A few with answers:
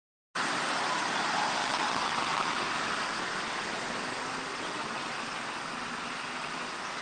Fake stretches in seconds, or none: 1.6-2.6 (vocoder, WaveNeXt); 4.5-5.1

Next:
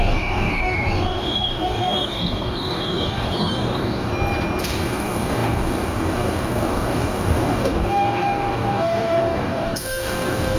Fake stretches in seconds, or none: 0.0-4.1 (codec, DAC); 4.6-10.6

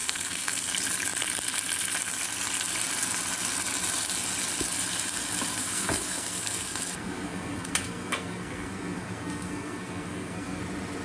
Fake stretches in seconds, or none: 0.0-0.7 (codec, SNAC); 5.5-10.6

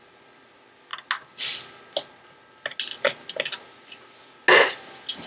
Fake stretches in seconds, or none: none

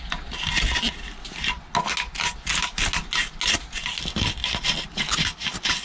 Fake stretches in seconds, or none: none

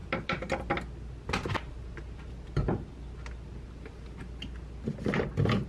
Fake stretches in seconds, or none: 0.0-0.7 (vocoder, BigVGAN v2)